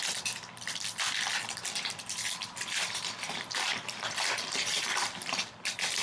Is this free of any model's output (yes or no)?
yes